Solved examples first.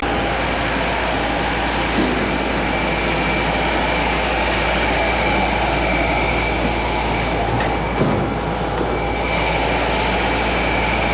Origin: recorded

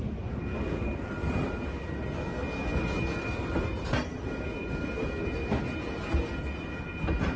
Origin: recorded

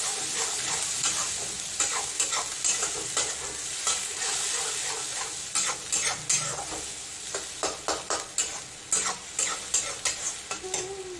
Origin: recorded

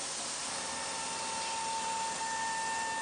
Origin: recorded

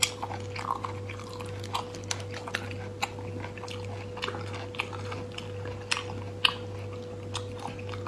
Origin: recorded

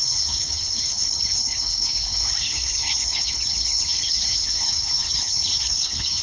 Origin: remade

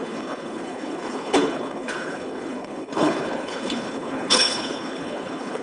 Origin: remade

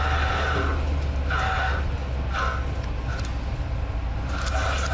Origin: recorded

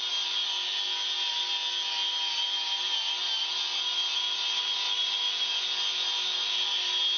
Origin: recorded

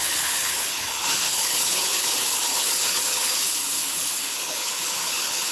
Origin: remade